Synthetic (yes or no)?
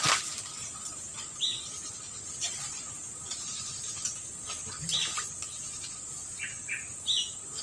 no